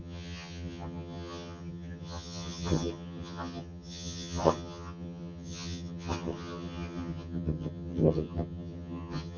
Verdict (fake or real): fake